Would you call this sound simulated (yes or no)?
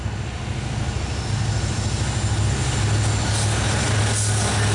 no